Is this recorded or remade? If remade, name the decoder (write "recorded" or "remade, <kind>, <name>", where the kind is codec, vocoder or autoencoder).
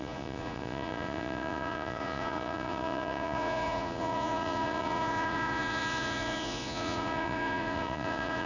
remade, vocoder, Vocos